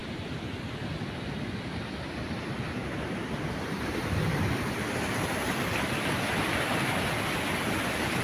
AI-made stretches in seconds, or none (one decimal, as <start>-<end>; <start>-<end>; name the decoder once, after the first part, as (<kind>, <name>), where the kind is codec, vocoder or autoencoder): 0.0-0.7 (vocoder, BigVGAN v2); 2.8-7.0